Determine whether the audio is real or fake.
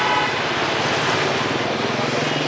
real